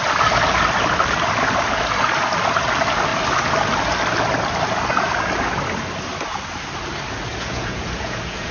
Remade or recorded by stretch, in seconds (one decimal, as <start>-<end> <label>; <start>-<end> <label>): 0.0-7.3 recorded; 7.3-8.5 remade